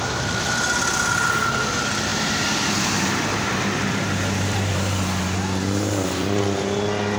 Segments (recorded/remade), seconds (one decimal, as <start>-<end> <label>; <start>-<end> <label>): 0.0-2.1 recorded; 2.1-6.4 remade; 6.4-7.2 recorded